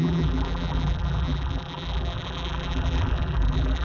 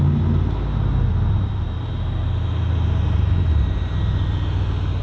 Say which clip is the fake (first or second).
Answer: first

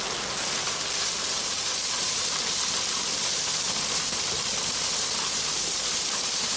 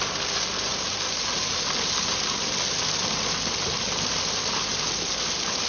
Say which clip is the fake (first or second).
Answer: first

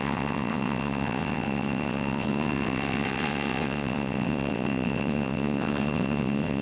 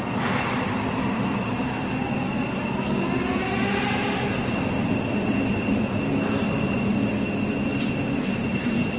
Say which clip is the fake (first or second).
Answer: first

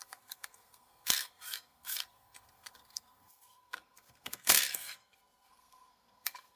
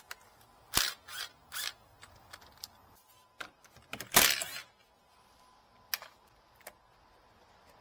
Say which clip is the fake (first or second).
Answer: first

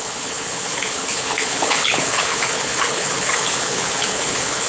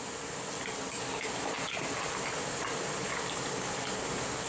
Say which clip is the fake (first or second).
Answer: first